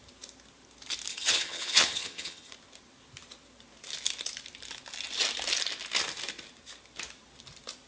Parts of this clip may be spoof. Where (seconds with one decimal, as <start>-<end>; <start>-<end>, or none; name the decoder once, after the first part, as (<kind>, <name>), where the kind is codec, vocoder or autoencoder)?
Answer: 1.1-2.5 (vocoder, HiFi-GAN)